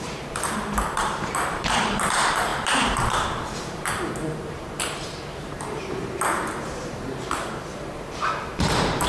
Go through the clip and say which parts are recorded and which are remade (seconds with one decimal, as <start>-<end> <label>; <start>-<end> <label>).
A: 0.0-9.1 remade

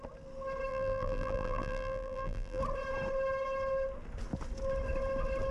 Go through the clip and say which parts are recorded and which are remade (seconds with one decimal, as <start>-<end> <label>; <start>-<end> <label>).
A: 0.0-0.7 recorded; 0.7-2.6 remade; 2.6-5.5 recorded

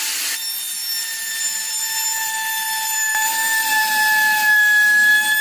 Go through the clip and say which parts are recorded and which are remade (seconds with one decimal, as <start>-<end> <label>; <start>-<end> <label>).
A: 0.0-0.8 recorded; 0.8-4.0 remade; 4.0-5.4 recorded

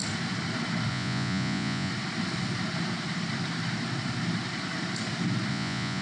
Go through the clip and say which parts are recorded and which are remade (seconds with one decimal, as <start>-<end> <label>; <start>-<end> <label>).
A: 0.0-0.9 recorded; 0.9-1.9 remade; 1.9-5.5 recorded; 5.5-6.0 remade

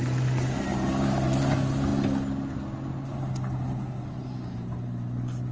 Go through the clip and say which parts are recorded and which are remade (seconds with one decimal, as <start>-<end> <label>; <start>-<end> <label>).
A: 0.0-5.5 recorded

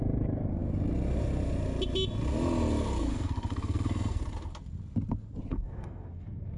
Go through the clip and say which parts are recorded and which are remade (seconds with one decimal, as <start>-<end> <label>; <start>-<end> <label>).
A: 0.0-3.0 recorded; 3.0-4.2 remade; 4.2-5.5 recorded; 5.5-6.6 remade

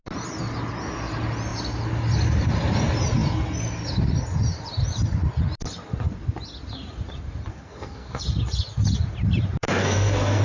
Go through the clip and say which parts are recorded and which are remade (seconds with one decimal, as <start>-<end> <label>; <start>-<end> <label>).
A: 0.0-7.5 recorded; 7.5-8.2 remade; 8.2-9.6 recorded; 9.6-10.4 remade

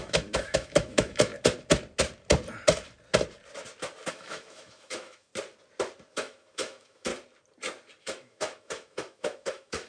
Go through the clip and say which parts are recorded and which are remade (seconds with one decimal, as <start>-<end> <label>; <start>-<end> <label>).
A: 0.0-1.3 remade; 1.3-4.1 recorded; 4.1-5.3 remade; 5.3-6.1 recorded; 6.1-7.1 remade; 7.1-8.0 recorded; 8.0-9.9 remade